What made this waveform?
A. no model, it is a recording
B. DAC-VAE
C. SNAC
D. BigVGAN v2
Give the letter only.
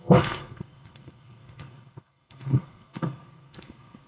C